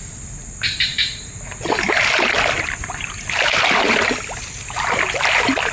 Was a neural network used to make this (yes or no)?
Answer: no